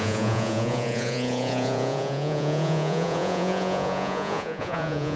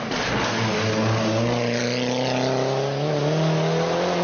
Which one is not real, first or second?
first